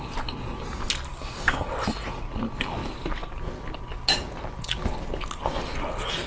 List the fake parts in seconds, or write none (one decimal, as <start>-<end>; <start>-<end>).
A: 1.1-1.7